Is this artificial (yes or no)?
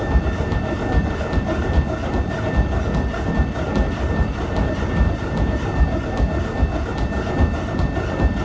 no